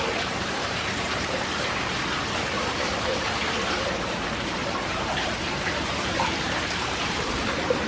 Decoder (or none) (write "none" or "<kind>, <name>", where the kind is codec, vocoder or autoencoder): vocoder, BigVGAN v2